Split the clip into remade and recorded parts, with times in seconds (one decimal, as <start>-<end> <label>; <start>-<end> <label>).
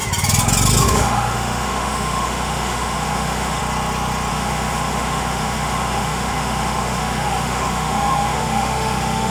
0.0-0.8 recorded; 0.8-3.6 remade; 3.6-4.3 recorded; 4.3-9.3 remade